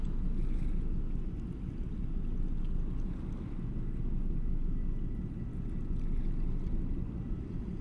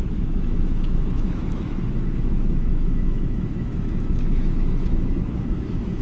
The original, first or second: first